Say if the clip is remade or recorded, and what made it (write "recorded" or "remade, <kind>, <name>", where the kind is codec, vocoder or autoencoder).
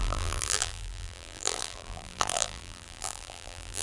remade, vocoder, BigVGAN v2